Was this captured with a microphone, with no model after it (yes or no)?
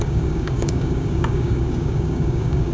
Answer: no